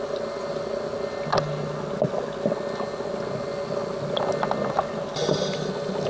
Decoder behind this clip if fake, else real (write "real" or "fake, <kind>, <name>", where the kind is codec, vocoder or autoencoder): real